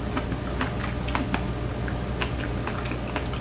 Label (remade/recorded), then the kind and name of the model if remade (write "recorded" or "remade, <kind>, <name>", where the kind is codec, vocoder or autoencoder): recorded